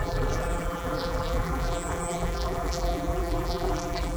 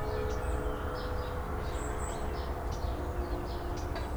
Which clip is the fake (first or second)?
first